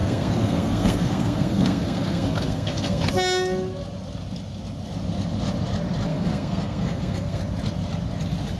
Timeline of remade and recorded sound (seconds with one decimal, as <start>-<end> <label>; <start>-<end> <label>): 0.0-3.1 remade; 3.1-6.1 recorded; 6.1-7.4 remade; 7.4-8.6 recorded